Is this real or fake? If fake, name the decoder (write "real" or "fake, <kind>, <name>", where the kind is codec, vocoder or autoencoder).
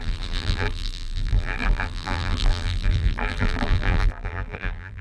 fake, vocoder, BigVGAN v2